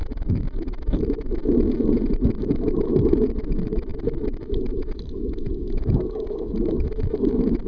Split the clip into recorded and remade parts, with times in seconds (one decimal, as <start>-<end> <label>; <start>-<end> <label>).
0.0-1.4 remade; 1.4-2.1 recorded; 2.1-7.7 remade